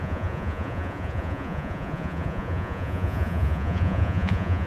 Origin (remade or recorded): remade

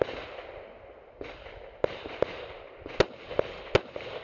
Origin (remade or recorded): recorded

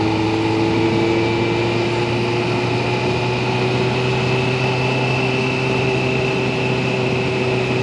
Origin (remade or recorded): recorded